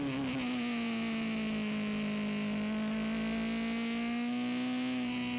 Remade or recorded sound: recorded